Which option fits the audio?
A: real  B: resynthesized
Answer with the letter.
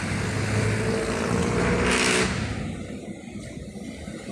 A